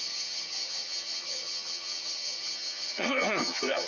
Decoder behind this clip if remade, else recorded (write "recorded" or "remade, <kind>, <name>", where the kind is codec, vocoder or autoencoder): remade, vocoder, HiFi-GAN